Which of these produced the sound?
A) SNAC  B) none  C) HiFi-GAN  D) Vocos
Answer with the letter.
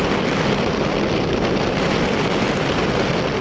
B